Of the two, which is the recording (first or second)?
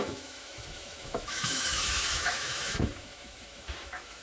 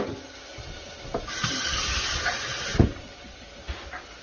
second